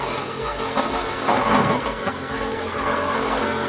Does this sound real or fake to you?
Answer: fake